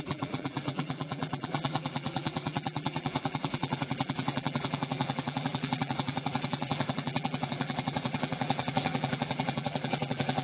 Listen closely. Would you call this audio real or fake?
fake